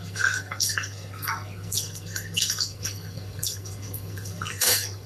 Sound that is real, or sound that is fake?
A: fake